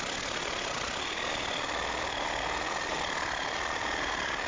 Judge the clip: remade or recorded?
recorded